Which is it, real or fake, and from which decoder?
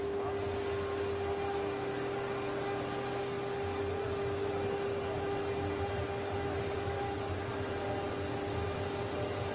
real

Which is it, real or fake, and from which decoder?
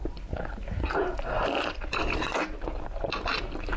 real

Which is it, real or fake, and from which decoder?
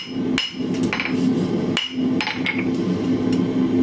real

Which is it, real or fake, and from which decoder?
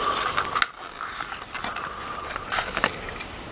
real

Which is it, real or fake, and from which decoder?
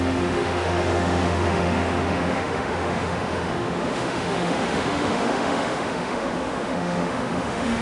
fake, autoencoder, DAC-VAE